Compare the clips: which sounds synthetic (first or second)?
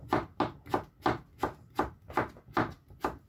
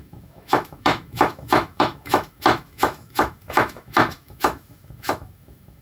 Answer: second